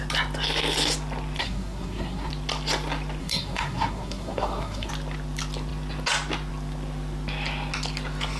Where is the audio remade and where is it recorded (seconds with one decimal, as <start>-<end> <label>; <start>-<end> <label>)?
0.0-1.4 recorded; 1.4-2.3 remade; 2.3-3.2 recorded; 3.2-4.9 remade; 4.9-8.4 recorded